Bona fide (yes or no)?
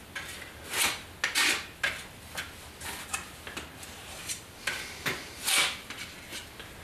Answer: yes